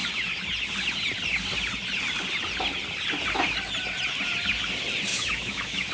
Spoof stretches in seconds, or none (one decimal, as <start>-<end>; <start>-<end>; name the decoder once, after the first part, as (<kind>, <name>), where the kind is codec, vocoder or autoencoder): 5.1-5.9 (autoencoder, DAC-VAE)